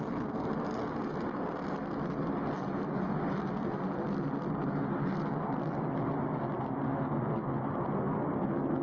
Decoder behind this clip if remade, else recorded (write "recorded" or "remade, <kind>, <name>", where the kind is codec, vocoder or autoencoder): recorded